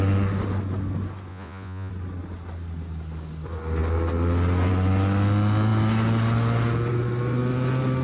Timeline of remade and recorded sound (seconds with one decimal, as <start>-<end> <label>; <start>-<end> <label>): 0.0-1.3 recorded; 1.3-1.9 remade; 1.9-8.0 recorded